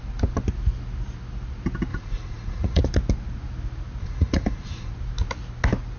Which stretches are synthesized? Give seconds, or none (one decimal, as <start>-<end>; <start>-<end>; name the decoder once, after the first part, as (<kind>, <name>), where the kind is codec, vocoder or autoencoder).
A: 1.9-2.8 (vocoder, Vocos); 4.0-4.9